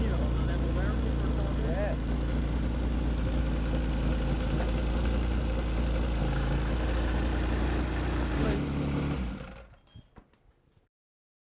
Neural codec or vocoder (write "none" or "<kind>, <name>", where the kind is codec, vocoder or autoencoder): none